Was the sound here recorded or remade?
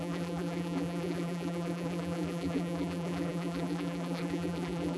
remade